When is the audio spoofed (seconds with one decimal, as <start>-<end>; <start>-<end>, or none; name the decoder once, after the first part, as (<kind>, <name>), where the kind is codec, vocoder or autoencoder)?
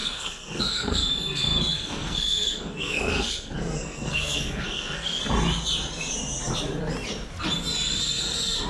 0.0-5.2 (codec, SNAC)